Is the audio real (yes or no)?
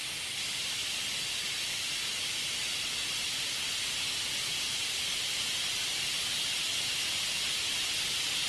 yes